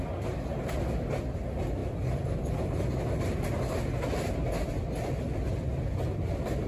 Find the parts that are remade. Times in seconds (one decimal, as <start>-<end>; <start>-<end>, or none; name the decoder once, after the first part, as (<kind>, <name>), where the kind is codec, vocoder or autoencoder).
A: none